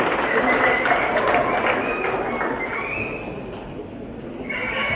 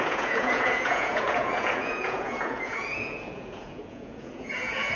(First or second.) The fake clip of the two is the second